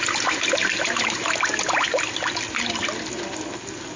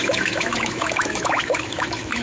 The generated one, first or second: second